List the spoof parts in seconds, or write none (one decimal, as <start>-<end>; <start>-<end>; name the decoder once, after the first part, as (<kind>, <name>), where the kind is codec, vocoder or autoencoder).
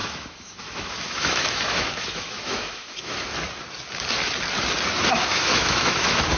0.0-3.3 (autoencoder, DAC-VAE); 5.1-6.4